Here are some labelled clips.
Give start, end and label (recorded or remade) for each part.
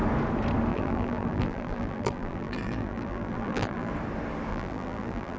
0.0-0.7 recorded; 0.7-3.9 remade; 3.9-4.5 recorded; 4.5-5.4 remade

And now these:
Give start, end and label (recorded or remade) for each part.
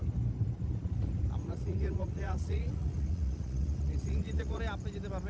0.0-1.4 recorded; 1.4-4.6 remade; 4.6-5.3 recorded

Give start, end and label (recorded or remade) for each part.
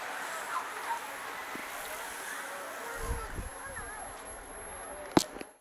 0.0-5.6 recorded